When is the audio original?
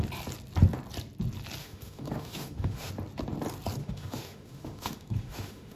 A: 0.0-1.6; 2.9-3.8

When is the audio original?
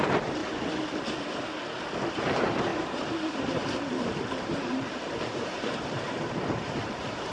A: 0.4-2.1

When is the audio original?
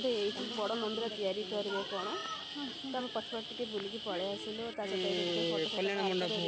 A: 0.0-6.5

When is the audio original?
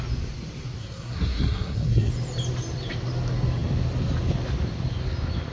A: 0.0-0.8; 2.1-5.5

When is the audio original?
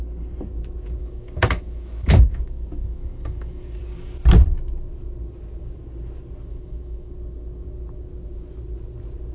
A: 0.0-1.0; 3.8-6.5; 7.1-9.3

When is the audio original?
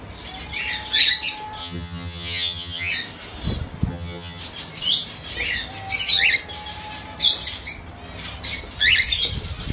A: 0.0-1.6; 2.9-3.9; 4.4-9.7